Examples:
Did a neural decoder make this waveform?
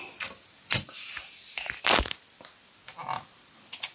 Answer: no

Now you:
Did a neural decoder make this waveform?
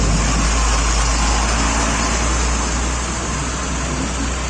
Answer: no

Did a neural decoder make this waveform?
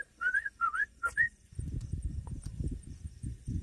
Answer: yes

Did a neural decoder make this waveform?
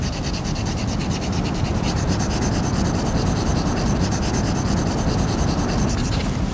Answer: no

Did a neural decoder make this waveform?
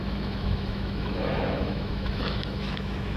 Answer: yes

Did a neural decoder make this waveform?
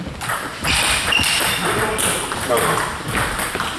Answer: no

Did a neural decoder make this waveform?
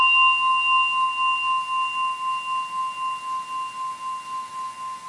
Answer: no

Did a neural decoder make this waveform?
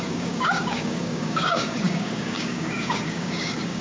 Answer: yes